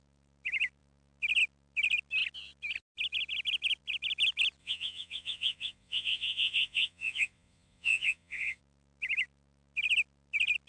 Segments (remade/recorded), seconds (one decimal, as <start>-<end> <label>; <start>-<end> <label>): 0.0-4.6 recorded; 4.6-8.6 remade; 8.6-10.7 recorded